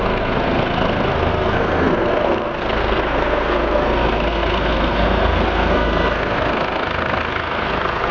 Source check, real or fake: fake